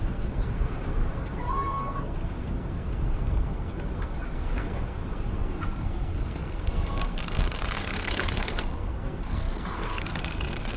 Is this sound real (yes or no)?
no